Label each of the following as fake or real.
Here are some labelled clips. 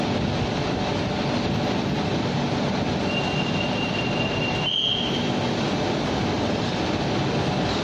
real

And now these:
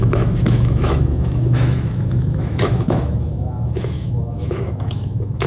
fake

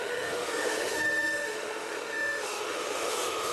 fake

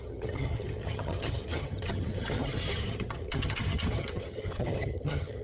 fake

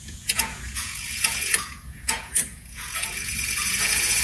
fake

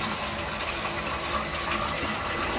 real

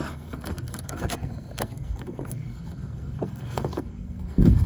fake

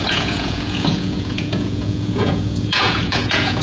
fake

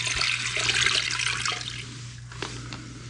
real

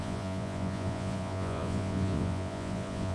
fake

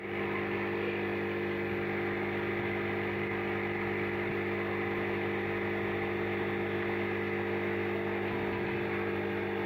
real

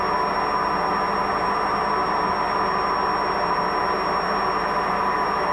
real